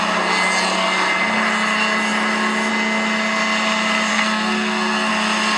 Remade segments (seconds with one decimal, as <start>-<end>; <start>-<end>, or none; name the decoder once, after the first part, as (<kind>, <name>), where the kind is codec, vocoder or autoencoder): 4.1-5.1 (codec, SNAC)